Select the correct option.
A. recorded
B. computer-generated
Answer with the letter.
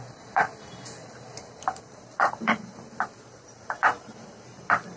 B